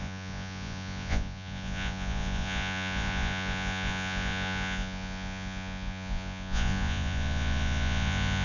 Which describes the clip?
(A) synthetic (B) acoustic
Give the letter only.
A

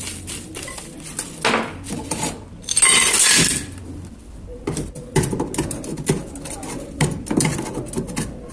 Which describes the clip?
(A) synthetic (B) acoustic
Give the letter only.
B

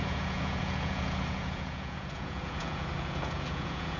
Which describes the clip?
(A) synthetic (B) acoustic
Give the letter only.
A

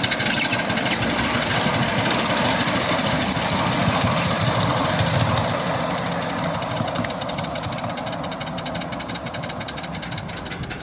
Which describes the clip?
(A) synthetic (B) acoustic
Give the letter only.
B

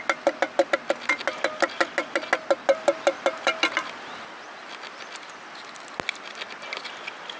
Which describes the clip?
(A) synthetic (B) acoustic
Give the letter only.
B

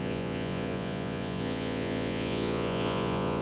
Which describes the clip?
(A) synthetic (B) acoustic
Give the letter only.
A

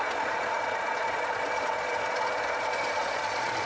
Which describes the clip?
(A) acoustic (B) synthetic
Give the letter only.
B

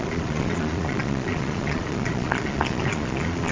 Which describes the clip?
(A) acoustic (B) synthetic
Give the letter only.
B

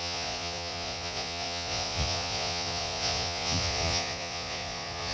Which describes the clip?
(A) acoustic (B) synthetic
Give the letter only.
B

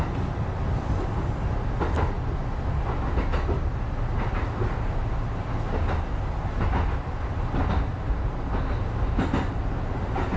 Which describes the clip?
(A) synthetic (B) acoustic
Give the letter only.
B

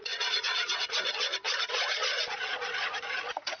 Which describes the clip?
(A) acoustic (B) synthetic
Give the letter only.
B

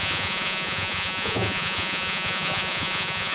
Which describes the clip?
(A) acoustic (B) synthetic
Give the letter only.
B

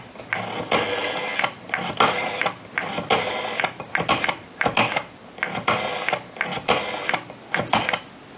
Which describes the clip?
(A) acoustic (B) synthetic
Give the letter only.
A